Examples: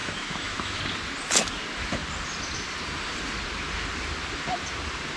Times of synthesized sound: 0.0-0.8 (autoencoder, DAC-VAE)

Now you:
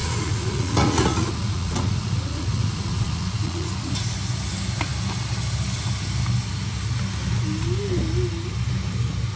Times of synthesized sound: 0.0-3.9 (vocoder, Vocos)

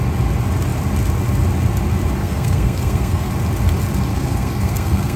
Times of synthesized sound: 2.2-3.3 (codec, SNAC); 4.1-5.2

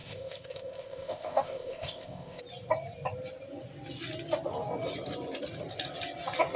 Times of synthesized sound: 0.0-2.4 (codec, ZipCodec)

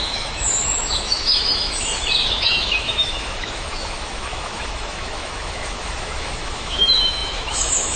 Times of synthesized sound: 0.0-8.0 (autoencoder, DAC-VAE)